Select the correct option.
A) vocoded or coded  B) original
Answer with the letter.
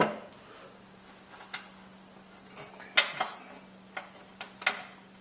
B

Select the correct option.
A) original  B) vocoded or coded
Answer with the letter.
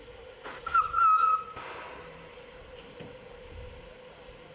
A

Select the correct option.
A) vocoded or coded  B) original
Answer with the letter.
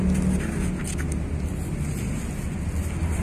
B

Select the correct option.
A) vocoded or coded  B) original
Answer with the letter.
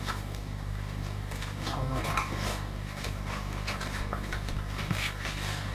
A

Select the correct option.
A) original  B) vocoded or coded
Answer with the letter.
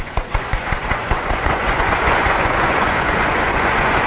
B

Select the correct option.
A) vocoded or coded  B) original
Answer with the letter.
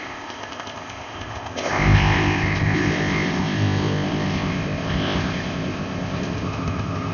A